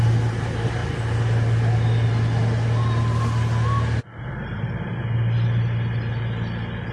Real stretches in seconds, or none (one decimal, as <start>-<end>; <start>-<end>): 0.0-6.9